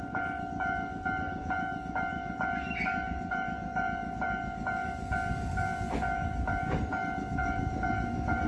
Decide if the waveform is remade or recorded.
remade